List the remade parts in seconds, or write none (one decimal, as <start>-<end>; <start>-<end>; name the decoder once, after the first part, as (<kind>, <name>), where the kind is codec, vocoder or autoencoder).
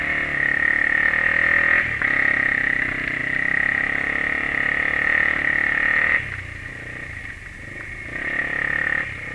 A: none